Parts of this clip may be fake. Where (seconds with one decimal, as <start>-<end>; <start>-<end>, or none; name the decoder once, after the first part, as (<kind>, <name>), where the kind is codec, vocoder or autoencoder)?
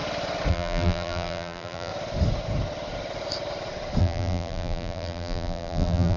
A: 0.5-1.9 (vocoder, BigVGAN v2); 4.0-6.2